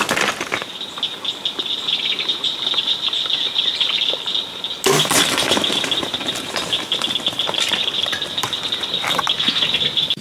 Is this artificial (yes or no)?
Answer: no